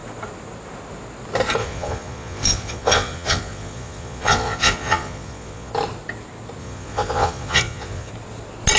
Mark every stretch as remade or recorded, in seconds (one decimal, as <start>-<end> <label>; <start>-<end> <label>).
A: 0.0-1.6 recorded; 1.6-5.7 remade; 5.7-6.6 recorded; 6.6-8.1 remade; 8.1-8.8 recorded